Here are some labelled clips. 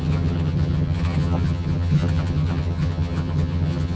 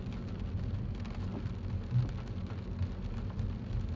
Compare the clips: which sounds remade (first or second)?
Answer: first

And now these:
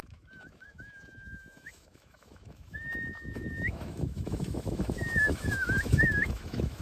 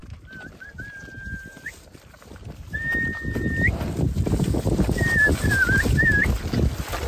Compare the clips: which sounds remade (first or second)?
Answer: first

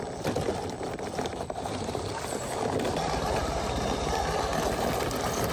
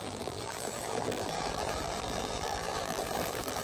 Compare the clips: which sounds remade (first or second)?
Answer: second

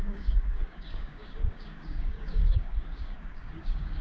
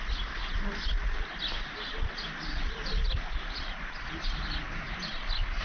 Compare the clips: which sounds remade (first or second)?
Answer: first